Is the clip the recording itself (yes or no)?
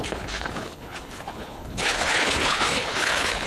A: no